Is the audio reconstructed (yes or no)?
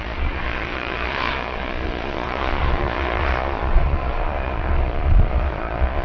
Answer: yes